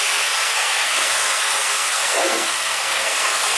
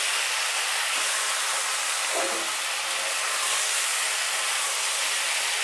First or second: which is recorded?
second